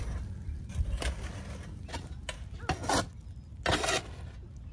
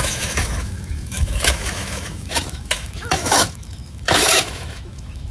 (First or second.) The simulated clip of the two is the second